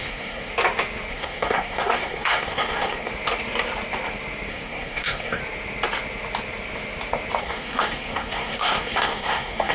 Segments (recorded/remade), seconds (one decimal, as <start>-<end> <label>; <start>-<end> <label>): 0.0-0.5 remade; 0.5-1.1 recorded; 1.1-3.1 remade; 3.1-4.5 recorded; 4.5-5.4 remade; 5.4-7.4 recorded; 7.4-9.7 remade